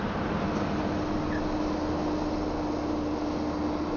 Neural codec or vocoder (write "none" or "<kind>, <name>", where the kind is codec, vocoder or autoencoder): none